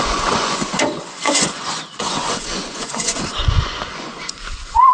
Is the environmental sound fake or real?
fake